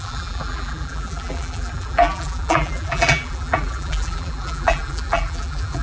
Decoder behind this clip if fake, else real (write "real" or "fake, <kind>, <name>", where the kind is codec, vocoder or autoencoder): fake, vocoder, BigVGAN v2